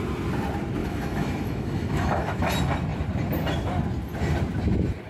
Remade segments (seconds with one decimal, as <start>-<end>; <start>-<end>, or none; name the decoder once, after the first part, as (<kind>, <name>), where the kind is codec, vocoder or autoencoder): 0.8-2.5 (autoencoder, DAC-VAE)